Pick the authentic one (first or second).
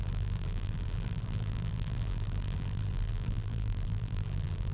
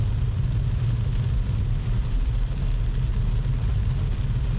second